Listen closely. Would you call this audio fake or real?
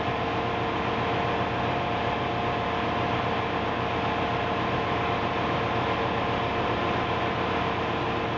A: real